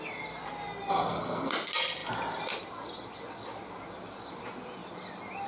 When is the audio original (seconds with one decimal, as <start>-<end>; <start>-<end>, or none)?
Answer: 0.0-0.9; 1.5-5.5

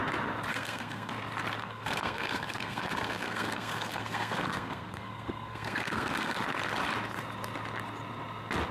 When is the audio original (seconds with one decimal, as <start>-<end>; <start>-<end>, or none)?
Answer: 0.0-0.5; 1.1-1.6; 6.4-8.7